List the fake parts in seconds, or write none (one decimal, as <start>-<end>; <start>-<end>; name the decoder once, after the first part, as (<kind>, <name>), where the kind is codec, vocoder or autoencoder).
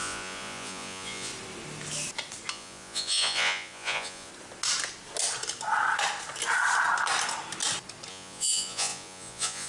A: 0.0-1.3 (vocoder, Vocos); 2.5-4.3; 8.1-9.7